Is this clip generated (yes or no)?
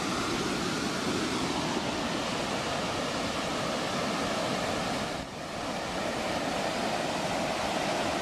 no